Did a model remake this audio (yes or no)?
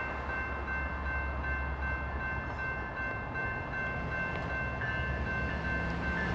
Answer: no